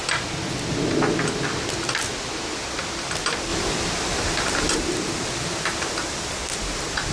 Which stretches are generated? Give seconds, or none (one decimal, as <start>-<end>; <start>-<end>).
none